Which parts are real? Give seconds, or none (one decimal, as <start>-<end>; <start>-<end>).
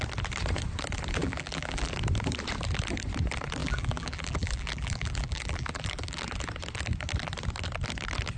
0.0-1.2; 1.9-3.6; 6.2-8.4